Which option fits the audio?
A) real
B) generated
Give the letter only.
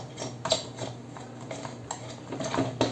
A